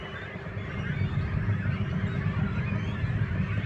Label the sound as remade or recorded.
remade